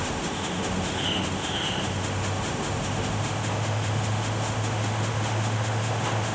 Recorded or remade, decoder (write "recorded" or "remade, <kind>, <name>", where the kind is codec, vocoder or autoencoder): remade, autoencoder, DAC-VAE